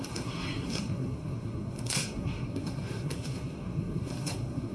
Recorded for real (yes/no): no